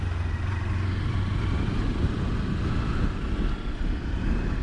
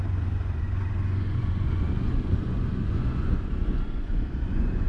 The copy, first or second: second